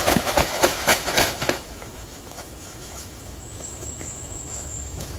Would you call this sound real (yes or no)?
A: no